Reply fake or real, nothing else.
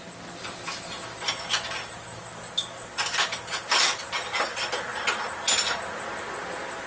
real